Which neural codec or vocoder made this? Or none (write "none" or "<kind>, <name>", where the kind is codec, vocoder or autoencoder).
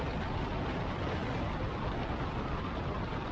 none